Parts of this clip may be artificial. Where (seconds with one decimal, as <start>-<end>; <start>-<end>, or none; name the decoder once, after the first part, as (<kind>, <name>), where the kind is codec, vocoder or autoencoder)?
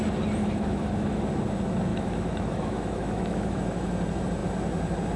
0.4-1.2 (autoencoder, DAC-VAE); 1.9-3.9